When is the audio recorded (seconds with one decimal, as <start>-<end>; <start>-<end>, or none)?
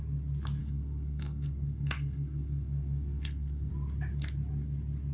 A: 0.0-0.6; 3.7-5.1